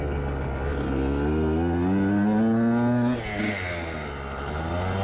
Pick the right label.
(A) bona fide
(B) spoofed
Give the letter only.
A